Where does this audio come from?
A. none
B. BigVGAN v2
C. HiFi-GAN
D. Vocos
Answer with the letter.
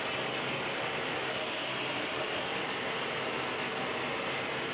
A